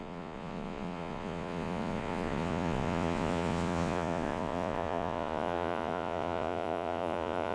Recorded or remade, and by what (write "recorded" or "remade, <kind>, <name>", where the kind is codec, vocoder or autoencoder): remade, vocoder, Vocos